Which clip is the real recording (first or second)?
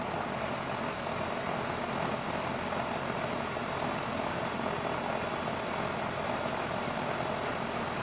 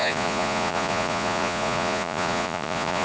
first